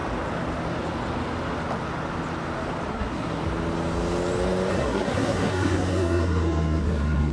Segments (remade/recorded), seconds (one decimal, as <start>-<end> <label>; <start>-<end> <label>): 0.0-2.9 recorded; 2.9-3.4 remade; 3.4-4.7 recorded; 4.7-7.3 remade